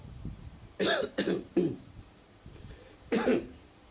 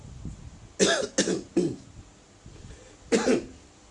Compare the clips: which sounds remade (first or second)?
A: first